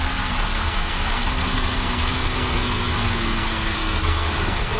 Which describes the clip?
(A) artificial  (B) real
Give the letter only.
A